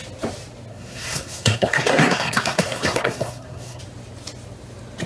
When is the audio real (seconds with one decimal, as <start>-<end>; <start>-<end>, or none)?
0.0-0.7; 3.8-5.1